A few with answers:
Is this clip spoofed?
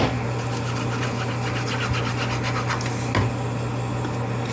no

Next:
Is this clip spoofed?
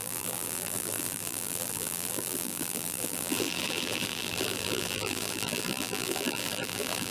yes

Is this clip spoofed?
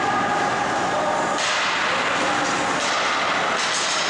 no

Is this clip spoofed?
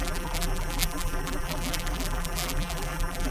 yes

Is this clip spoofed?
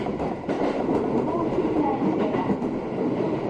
yes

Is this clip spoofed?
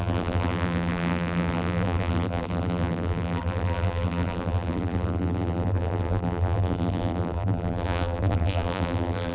yes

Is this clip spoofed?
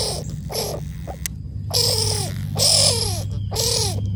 no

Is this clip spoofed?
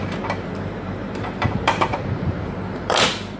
yes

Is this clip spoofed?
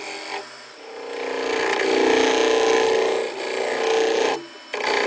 no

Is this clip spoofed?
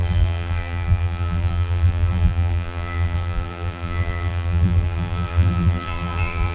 yes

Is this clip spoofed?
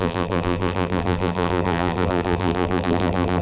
yes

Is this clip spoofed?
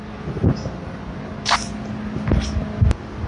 no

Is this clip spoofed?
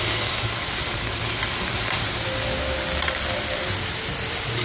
no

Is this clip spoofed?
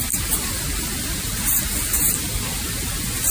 no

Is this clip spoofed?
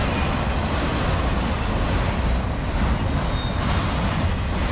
no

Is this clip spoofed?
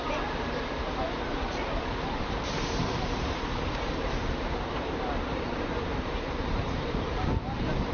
yes